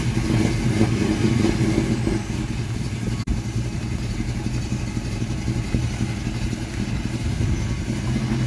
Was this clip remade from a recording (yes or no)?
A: no